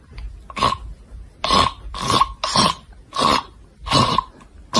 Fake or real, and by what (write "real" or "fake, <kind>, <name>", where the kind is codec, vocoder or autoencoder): real